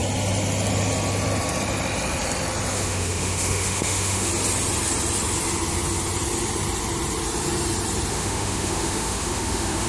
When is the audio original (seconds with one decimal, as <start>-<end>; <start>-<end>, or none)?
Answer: 0.0-2.7; 4.3-8.1

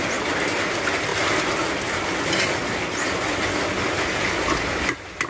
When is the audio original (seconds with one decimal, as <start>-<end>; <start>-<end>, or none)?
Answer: 0.0-5.3